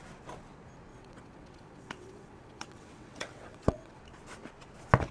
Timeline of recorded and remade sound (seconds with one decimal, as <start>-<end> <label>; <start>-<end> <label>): 0.0-0.9 recorded; 0.9-4.0 remade; 4.0-5.1 recorded